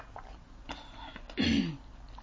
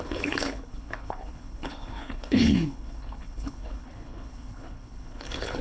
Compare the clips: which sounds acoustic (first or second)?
first